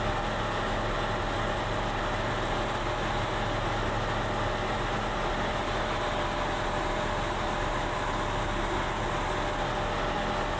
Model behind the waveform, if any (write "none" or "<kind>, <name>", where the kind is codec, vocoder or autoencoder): none